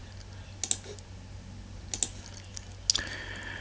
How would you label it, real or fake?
real